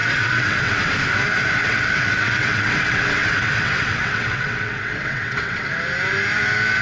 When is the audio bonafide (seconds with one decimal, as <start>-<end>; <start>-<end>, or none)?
0.9-1.6; 5.7-6.8